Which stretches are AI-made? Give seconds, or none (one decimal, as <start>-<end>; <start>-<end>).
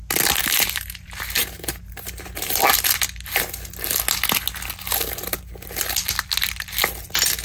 0.4-3.0